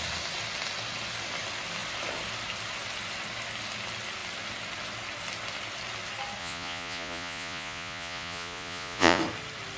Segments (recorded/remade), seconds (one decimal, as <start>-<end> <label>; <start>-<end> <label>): 0.0-6.4 recorded; 6.4-9.2 remade; 9.2-9.8 recorded